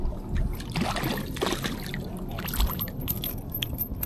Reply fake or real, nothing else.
real